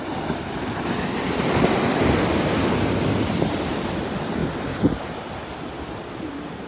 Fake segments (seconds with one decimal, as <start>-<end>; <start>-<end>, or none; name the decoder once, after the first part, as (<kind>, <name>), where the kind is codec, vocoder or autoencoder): none